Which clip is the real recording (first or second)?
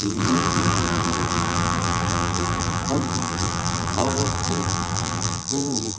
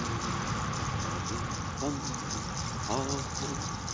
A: second